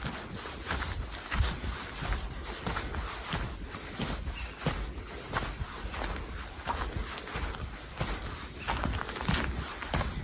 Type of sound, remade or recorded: recorded